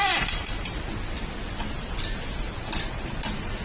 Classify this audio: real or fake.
real